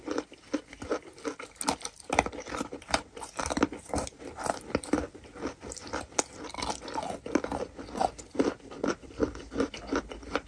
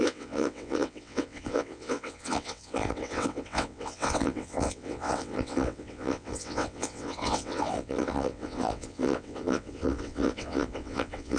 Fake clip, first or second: second